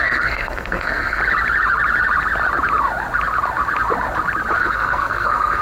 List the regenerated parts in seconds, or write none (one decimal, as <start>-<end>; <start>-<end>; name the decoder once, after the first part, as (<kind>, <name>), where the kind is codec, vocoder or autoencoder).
0.0-1.2 (codec, SNAC); 4.6-5.6